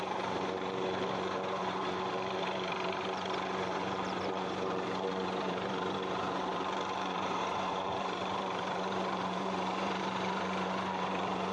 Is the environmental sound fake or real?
fake